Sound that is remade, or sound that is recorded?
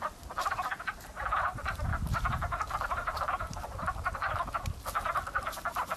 recorded